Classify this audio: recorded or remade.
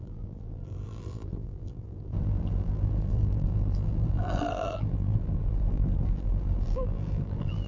remade